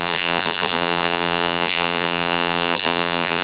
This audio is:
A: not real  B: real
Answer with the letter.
A